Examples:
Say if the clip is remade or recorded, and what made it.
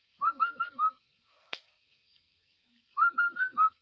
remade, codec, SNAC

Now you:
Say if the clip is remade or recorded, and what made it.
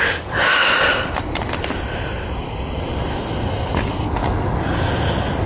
recorded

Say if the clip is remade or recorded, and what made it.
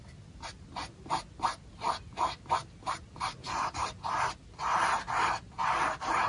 recorded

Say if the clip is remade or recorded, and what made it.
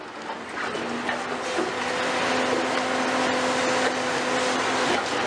recorded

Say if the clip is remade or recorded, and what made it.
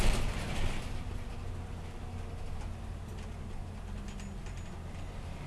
recorded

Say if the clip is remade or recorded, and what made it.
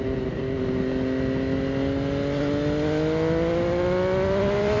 recorded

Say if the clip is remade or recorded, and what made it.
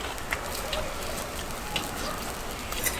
recorded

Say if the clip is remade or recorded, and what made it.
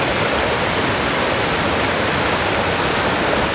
recorded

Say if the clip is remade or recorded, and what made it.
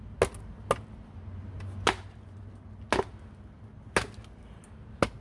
recorded